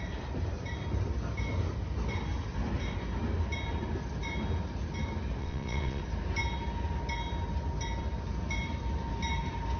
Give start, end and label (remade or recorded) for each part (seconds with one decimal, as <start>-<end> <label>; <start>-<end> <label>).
0.0-5.4 recorded; 5.4-6.0 remade; 6.0-9.8 recorded